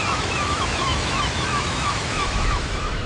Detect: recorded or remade remade